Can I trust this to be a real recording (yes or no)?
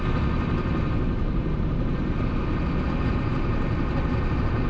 yes